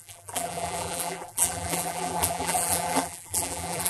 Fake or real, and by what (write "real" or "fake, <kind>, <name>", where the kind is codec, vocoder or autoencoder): fake, vocoder, BigVGAN v2